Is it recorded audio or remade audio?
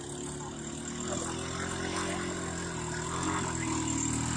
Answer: recorded